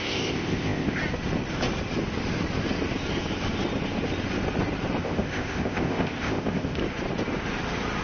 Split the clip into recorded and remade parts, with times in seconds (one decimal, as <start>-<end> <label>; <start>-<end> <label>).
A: 0.0-1.0 remade; 1.0-5.0 recorded; 5.0-6.8 remade; 6.8-8.0 recorded

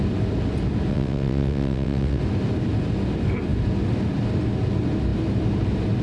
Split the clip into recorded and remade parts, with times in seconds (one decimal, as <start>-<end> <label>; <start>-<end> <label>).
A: 0.0-0.9 recorded; 0.9-2.2 remade; 2.2-6.0 recorded

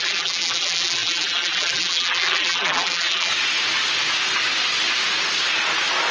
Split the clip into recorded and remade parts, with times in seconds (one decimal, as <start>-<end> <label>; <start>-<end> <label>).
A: 0.0-3.3 remade; 3.3-6.1 recorded

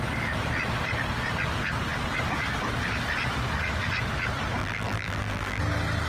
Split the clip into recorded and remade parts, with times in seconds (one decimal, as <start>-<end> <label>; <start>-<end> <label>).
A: 0.0-4.6 recorded; 4.6-5.6 remade; 5.6-6.1 recorded

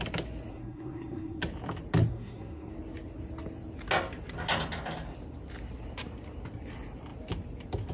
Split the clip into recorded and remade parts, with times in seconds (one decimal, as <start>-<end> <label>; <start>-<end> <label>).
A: 0.0-0.5 recorded; 0.5-1.4 remade; 1.4-2.1 recorded; 2.1-2.7 remade; 2.7-7.9 recorded

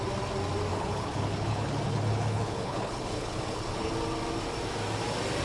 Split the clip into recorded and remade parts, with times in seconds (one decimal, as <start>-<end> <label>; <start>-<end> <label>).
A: 0.0-0.7 recorded; 0.7-3.9 remade; 3.9-5.4 recorded